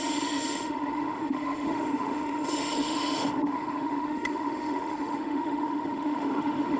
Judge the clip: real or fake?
fake